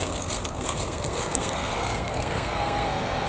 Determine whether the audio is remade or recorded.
remade